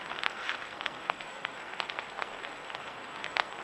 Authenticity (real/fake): fake